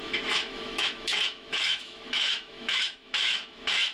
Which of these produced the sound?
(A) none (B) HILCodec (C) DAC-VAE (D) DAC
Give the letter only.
C